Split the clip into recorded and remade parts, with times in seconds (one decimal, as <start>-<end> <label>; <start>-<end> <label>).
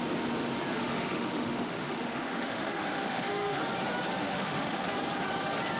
0.0-0.7 recorded; 0.7-3.6 remade; 3.6-4.2 recorded; 4.2-4.8 remade; 4.8-5.8 recorded